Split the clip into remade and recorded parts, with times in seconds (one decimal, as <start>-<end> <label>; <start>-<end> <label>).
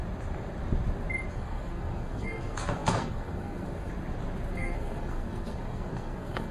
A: 0.0-1.3 recorded; 1.3-3.9 remade; 3.9-4.5 recorded; 4.5-6.5 remade